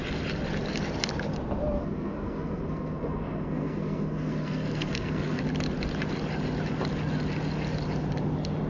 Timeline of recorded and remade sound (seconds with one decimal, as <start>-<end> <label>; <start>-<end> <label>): 0.0-1.8 recorded; 1.8-5.4 remade; 5.4-8.7 recorded